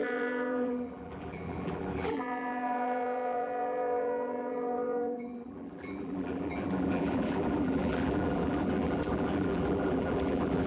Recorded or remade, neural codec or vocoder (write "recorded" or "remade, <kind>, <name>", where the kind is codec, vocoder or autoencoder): remade, vocoder, BigVGAN v2